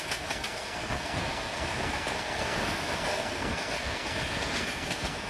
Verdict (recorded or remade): remade